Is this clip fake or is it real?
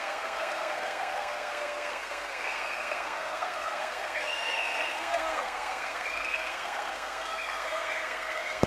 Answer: fake